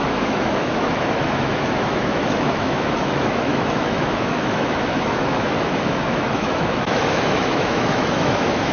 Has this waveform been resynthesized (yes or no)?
yes